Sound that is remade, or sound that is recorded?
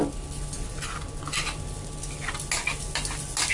recorded